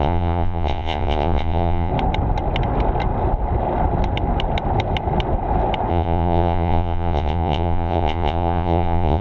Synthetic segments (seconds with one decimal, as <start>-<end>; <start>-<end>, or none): 0.0-1.9; 5.9-9.2